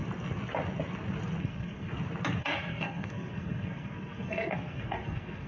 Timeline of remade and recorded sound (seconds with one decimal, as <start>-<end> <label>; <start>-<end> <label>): 0.0-1.4 recorded; 1.4-1.9 remade; 1.9-2.4 recorded; 2.4-5.5 remade

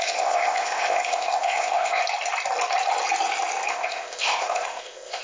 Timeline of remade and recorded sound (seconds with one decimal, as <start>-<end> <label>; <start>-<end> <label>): 0.0-2.0 remade; 2.0-3.7 recorded; 3.7-5.2 remade

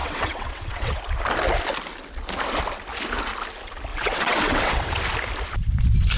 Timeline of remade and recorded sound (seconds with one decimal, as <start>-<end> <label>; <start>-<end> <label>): 0.0-1.0 remade; 1.0-3.9 recorded; 3.9-5.0 remade; 5.0-6.2 recorded

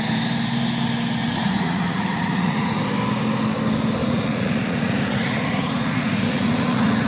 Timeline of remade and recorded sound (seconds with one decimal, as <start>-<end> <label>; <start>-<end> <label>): 0.0-1.2 recorded; 1.2-2.8 remade; 2.8-4.0 recorded; 4.0-7.1 remade

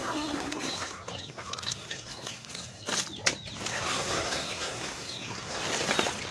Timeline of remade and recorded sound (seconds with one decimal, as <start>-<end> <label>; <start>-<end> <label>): 0.0-2.9 remade; 2.9-3.7 recorded; 3.7-5.6 remade; 5.6-6.3 recorded